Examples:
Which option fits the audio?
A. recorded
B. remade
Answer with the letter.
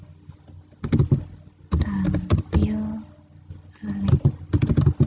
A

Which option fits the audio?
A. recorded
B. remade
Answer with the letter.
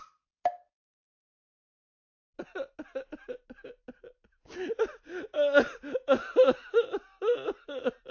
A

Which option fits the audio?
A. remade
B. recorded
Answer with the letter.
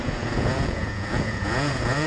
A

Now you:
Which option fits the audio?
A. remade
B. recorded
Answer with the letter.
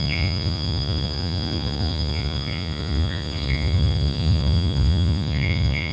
A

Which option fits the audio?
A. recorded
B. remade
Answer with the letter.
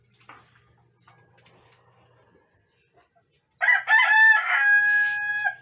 A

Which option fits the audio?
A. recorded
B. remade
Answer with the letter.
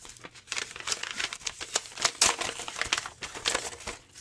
A